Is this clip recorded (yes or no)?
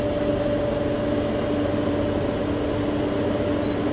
yes